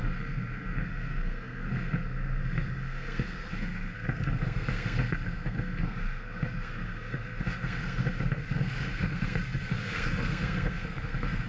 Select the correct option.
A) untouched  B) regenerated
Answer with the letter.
B